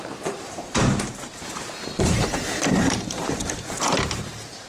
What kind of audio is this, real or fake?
fake